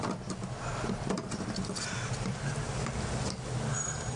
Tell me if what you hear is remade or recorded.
recorded